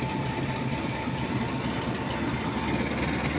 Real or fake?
real